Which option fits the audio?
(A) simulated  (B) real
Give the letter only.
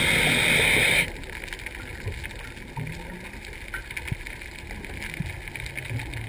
B